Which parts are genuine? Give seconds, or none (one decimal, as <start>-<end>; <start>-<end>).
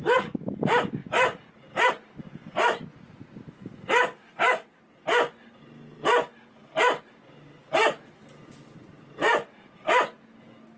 0.0-10.8